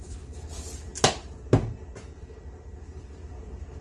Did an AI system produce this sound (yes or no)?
no